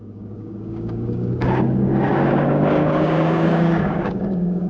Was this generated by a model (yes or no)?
yes